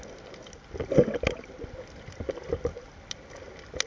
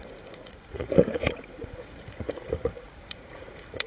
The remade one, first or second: second